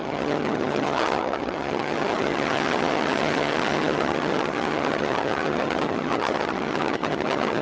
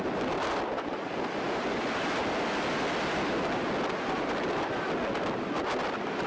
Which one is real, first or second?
second